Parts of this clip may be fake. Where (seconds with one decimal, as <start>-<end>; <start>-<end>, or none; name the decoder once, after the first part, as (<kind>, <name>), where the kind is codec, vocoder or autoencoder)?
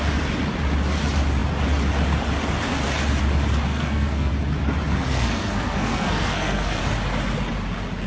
3.7-4.3 (codec, SNAC); 5.1-6.8